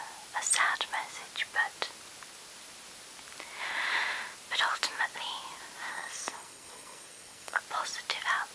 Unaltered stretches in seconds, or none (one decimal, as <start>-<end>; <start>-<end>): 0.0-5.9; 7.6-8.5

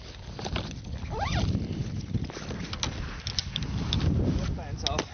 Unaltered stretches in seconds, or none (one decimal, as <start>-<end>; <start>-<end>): 0.0-5.1

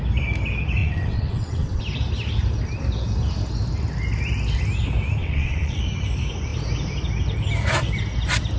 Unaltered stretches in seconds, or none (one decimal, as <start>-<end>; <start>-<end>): 0.0-0.8; 1.8-5.2; 5.8-8.6